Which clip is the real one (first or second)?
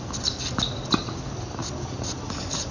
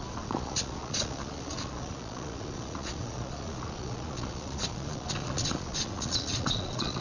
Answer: first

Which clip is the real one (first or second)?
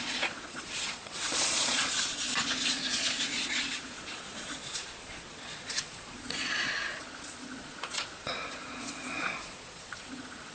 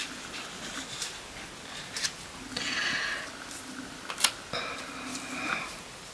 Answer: second